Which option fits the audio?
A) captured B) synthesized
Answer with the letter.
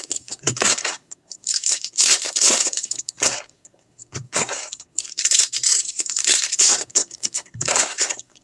B